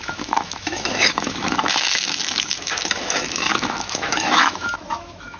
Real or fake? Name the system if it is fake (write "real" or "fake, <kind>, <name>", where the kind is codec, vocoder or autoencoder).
fake, autoencoder, DAC-VAE